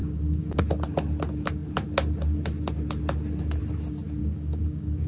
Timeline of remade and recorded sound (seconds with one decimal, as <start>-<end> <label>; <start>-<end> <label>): 0.0-0.6 remade; 0.6-4.2 recorded; 4.2-5.1 remade